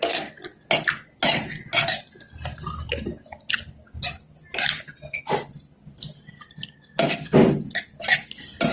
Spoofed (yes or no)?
no